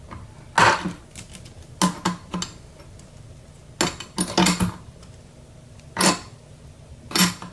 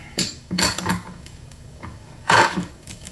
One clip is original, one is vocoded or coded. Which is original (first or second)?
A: first